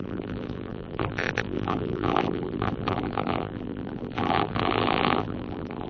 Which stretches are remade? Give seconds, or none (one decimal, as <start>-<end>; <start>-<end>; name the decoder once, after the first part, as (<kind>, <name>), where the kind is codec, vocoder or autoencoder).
0.0-5.9 (vocoder, BigVGAN v2)